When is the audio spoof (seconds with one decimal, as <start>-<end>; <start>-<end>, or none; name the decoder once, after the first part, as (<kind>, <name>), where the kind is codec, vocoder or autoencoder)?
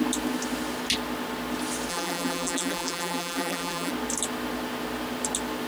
1.9-3.9 (vocoder, BigVGAN v2)